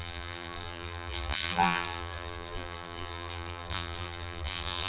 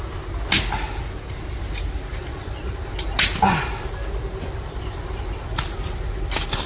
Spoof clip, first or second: first